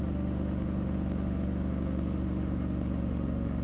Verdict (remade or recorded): remade